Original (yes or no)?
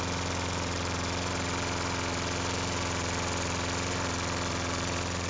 yes